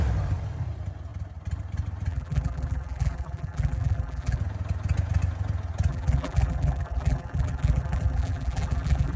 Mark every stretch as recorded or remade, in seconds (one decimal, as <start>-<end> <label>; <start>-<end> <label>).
0.0-2.1 recorded; 2.1-4.4 remade; 4.4-5.9 recorded; 5.9-9.2 remade